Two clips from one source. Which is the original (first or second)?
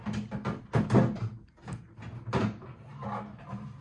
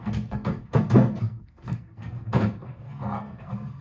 first